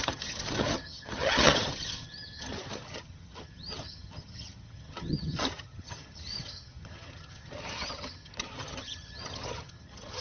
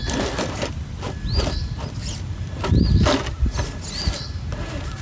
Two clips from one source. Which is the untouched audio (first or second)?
second